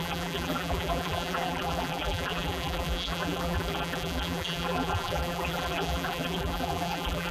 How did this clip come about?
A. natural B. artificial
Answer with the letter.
B